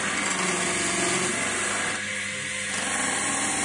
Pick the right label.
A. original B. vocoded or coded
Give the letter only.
A